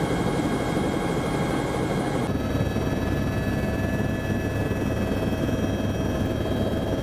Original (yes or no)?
yes